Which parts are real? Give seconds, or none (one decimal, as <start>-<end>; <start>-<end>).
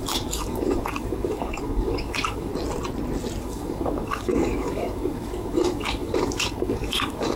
2.5-3.4